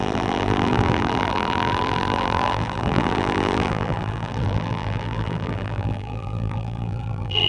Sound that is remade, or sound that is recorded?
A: remade